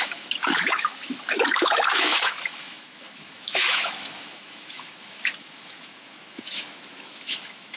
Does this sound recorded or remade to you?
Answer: remade